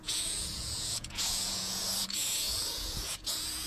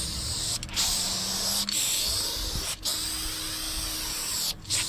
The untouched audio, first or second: second